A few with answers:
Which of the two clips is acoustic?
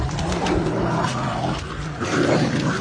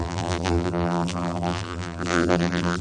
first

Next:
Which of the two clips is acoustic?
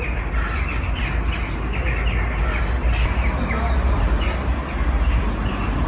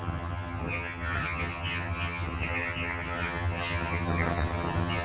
first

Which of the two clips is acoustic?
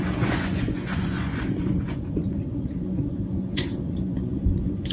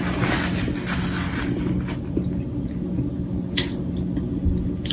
second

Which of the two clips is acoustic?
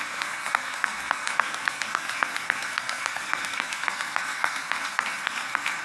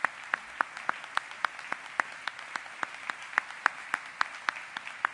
second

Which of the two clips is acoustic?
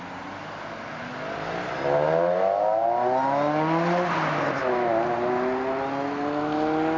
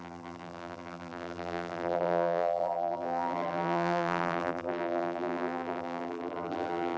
first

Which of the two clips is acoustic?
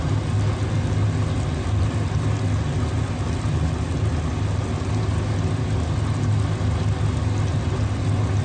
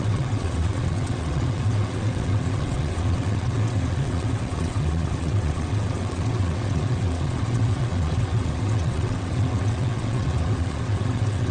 first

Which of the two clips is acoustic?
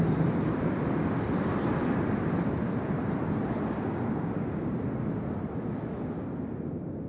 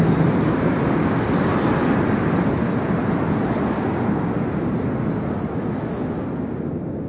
second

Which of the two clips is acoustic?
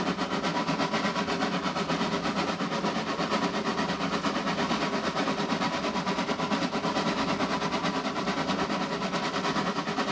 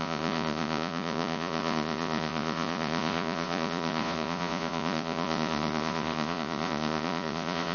first